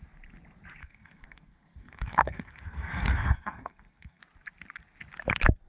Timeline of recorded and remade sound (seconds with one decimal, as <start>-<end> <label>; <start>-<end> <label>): 0.0-0.8 recorded; 0.8-4.2 remade; 4.2-5.7 recorded